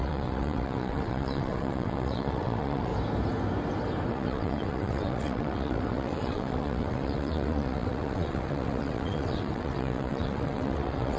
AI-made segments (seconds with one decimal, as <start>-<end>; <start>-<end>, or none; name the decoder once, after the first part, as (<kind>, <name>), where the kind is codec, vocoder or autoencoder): 0.0-2.9 (vocoder, WaveNeXt); 4.1-11.2